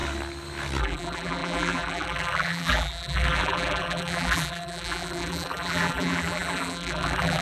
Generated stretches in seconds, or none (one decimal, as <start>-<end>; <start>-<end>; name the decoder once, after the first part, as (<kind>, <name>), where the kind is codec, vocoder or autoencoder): 0.8-7.4 (vocoder, BigVGAN v2)